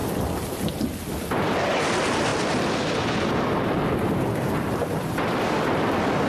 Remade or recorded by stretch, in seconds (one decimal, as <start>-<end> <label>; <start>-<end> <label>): 0.0-2.3 recorded; 2.3-5.4 remade; 5.4-6.3 recorded